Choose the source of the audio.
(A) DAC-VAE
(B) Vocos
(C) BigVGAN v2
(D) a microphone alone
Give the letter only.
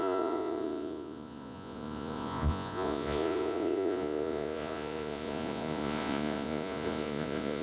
B